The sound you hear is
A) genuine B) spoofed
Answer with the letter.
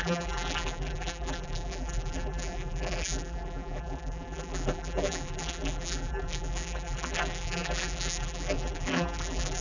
B